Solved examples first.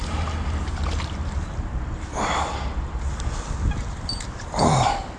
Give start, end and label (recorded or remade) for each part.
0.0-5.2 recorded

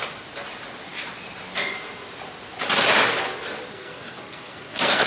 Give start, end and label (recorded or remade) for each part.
0.0-3.7 recorded; 3.7-5.1 remade

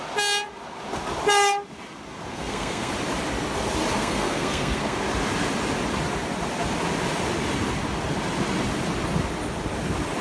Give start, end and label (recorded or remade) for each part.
0.0-2.3 recorded; 2.3-2.9 remade; 2.9-4.0 recorded; 4.0-5.0 remade; 5.0-10.2 recorded

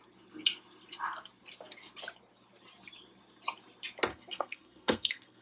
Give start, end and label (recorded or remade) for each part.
0.0-4.1 recorded; 4.1-5.4 remade

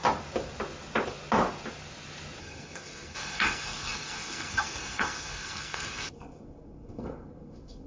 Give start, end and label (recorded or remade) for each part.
0.0-2.4 recorded; 2.4-7.9 remade

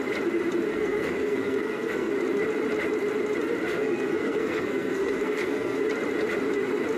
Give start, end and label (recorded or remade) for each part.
0.0-0.7 recorded; 0.7-2.1 remade; 2.1-3.7 recorded; 3.7-5.8 remade; 5.8-7.0 recorded